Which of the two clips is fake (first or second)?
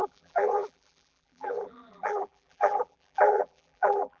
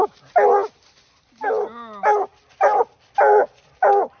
first